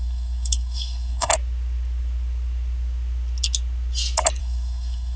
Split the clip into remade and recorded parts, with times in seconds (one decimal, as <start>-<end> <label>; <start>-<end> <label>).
0.0-1.3 remade; 1.3-4.4 recorded; 4.4-5.2 remade